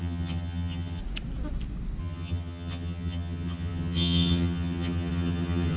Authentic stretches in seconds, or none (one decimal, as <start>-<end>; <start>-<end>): 1.0-2.0